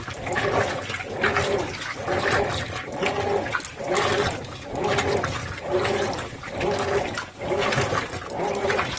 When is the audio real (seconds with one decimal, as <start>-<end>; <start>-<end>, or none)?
0.0-5.4; 7.4-9.0